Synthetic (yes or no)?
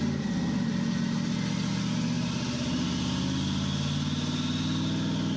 no